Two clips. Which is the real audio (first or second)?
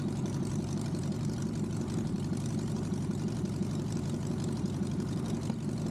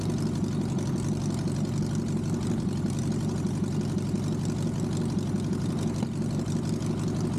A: second